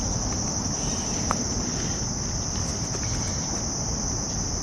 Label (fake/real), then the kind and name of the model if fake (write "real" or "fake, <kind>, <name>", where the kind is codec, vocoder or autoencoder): real